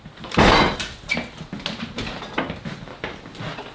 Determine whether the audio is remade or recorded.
recorded